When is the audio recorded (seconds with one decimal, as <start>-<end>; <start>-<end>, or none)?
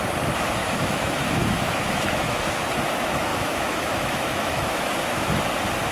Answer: 0.0-0.6; 2.4-3.3; 5.3-5.9